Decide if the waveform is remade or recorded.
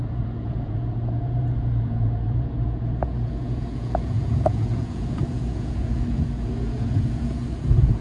remade